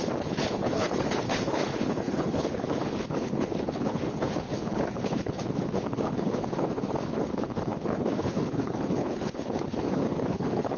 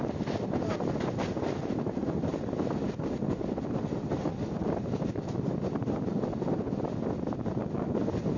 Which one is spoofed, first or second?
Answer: first